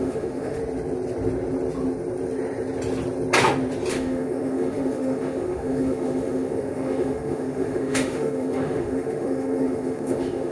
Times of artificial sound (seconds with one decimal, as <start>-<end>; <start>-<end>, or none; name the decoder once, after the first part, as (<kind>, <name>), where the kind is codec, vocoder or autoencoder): 0.0-0.6 (autoencoder, DAC-VAE); 3.9-10.5